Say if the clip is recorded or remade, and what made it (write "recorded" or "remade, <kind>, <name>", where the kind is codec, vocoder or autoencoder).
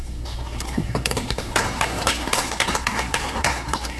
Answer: remade, codec, SNAC